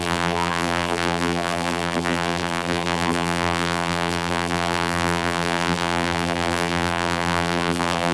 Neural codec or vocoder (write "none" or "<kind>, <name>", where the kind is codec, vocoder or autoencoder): vocoder, BigVGAN v2